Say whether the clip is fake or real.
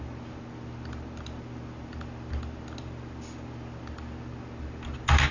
real